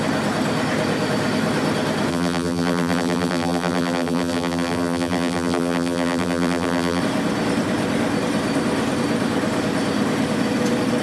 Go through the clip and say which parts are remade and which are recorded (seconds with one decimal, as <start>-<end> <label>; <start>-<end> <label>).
0.0-2.1 recorded; 2.1-7.0 remade; 7.0-11.0 recorded